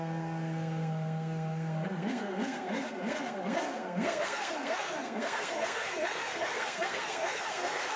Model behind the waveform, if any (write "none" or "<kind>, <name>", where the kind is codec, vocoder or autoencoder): codec, SNAC